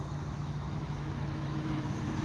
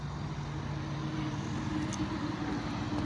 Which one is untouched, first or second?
second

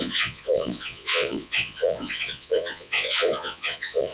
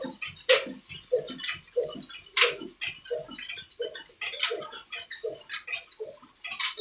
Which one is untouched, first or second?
second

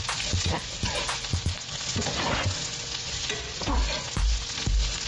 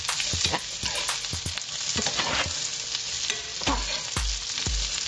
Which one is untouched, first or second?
second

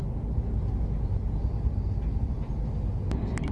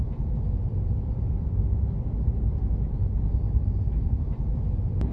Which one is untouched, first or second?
first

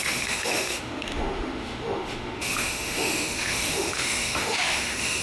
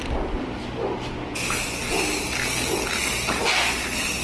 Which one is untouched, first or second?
second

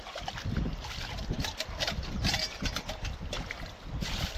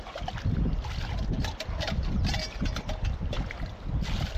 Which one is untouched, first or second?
second